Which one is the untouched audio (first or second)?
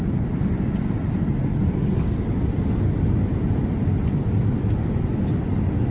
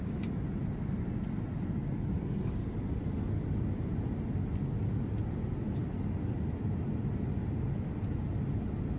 second